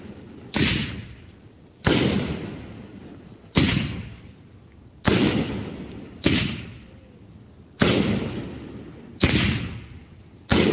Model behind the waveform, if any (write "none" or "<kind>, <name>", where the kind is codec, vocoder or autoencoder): none